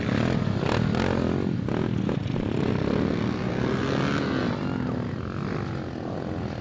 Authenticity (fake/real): real